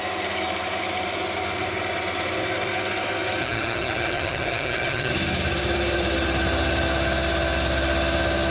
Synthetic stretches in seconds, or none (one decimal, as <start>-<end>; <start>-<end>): 3.4-5.1